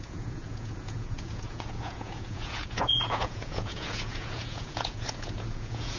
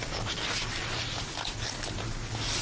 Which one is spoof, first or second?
first